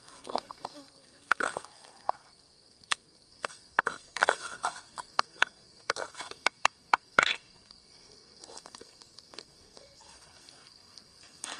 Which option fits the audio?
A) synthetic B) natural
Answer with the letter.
A